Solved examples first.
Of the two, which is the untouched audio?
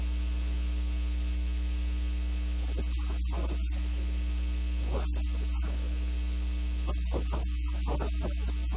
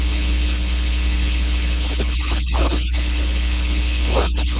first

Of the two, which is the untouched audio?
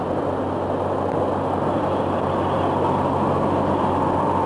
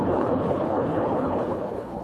first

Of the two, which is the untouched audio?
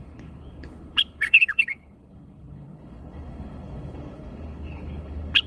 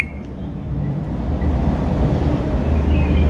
second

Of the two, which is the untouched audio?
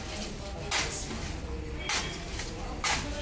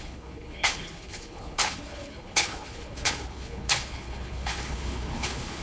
first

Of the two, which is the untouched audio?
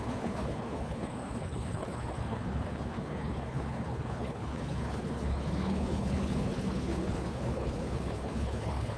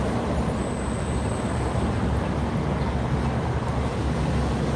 second